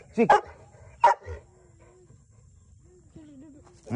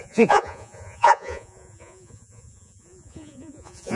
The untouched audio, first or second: first